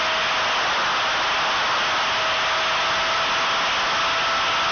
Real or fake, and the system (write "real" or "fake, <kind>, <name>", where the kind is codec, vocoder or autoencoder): real